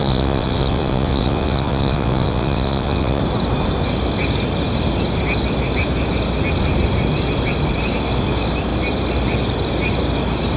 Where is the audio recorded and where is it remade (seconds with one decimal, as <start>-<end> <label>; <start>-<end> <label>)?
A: 0.0-3.2 remade; 3.2-10.6 recorded